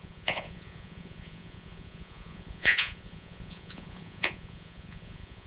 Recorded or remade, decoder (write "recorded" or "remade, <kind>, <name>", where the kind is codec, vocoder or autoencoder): remade, vocoder, Vocos